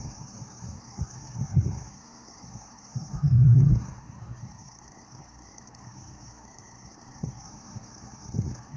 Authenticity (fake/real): fake